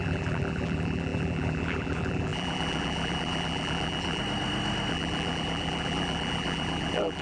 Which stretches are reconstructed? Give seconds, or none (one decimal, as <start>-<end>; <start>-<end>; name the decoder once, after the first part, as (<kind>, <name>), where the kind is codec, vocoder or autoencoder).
0.0-4.2 (vocoder, BigVGAN v2); 4.9-7.2